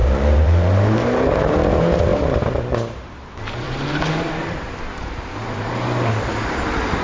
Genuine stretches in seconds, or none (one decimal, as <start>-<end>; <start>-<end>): 1.5-2.1; 6.3-7.0